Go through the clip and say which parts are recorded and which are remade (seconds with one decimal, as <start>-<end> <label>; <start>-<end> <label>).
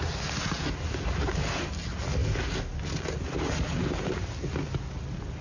0.0-5.4 recorded